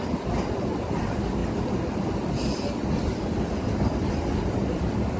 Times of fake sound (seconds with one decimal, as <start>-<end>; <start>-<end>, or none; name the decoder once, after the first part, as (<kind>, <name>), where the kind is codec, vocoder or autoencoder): none